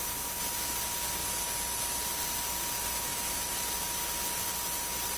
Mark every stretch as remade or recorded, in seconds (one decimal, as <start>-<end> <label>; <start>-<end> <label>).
0.0-3.1 recorded; 3.1-3.7 remade; 3.7-5.2 recorded